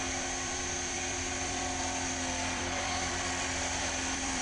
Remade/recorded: remade